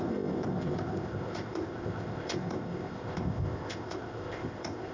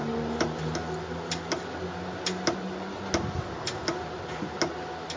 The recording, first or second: second